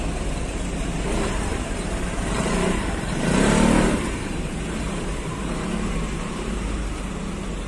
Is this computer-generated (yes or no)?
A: yes